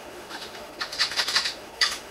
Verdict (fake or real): fake